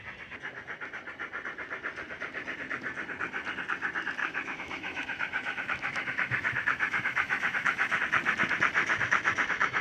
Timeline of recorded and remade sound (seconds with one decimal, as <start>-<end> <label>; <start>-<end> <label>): 0.0-4.2 recorded; 4.2-8.0 remade; 8.0-8.8 recorded; 8.8-9.8 remade